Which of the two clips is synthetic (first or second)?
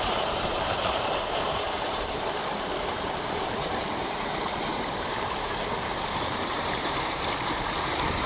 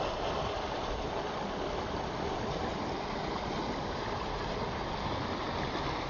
first